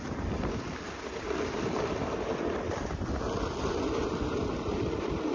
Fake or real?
real